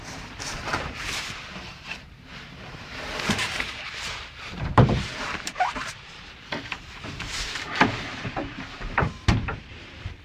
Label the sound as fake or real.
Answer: fake